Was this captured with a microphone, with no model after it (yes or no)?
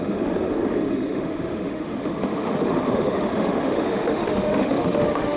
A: no